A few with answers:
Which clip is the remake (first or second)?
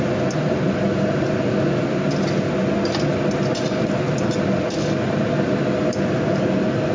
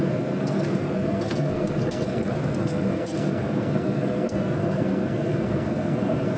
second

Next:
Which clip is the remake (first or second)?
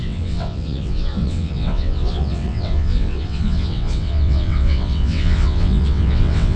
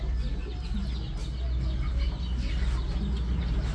first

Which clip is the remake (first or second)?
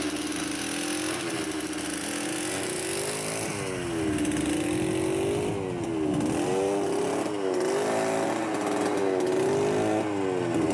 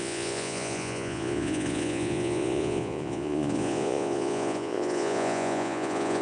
second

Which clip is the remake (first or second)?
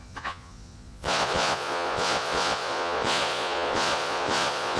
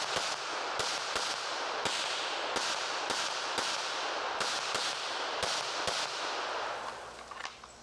first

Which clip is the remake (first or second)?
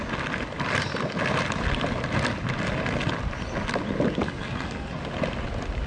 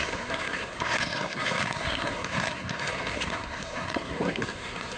second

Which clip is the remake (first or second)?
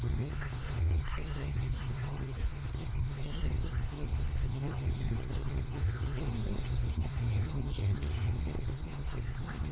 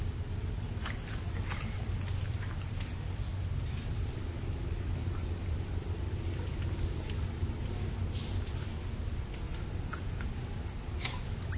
first